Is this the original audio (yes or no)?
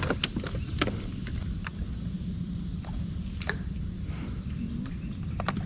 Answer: yes